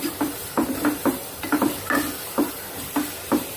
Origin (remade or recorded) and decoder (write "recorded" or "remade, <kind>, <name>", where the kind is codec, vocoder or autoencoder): remade, vocoder, BigVGAN v2